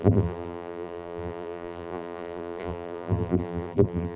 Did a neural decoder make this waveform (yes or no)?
yes